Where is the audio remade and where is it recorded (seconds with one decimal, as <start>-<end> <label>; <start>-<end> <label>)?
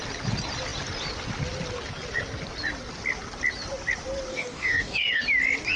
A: 0.0-4.3 recorded; 4.3-5.2 remade; 5.2-5.8 recorded